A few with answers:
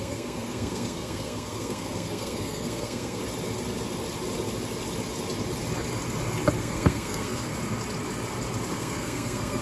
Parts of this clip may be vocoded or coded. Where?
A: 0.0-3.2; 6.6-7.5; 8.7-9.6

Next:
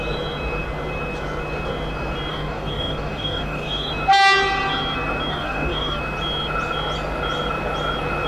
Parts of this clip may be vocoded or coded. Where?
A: 2.3-3.9; 5.3-6.0

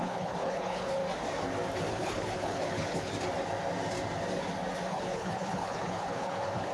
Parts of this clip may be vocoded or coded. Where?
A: 0.0-1.0; 1.9-3.1; 4.9-6.7

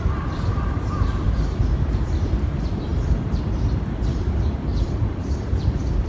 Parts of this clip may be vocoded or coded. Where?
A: 0.0-6.1

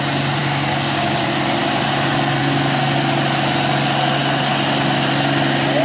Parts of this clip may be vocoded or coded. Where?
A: 0.4-1.2

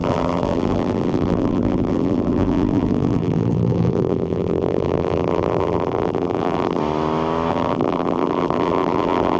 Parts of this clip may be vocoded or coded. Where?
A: 0.0-6.8; 7.5-9.4